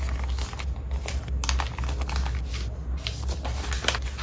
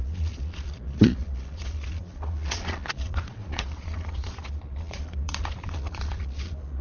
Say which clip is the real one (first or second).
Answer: first